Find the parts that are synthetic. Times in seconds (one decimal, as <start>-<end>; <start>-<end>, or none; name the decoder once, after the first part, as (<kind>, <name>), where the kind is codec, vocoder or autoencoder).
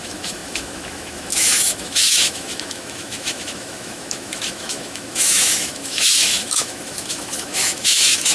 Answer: 0.0-8.3 (autoencoder, DAC-VAE)